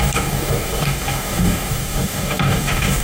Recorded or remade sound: remade